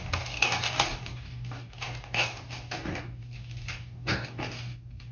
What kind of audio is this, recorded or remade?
remade